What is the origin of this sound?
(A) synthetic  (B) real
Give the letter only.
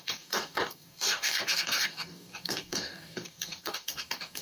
A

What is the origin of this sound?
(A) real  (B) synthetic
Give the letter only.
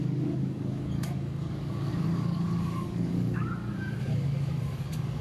B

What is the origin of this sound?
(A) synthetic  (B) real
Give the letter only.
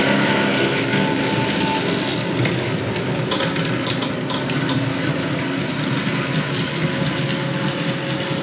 B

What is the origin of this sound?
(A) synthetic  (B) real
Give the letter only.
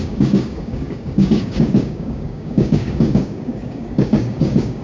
A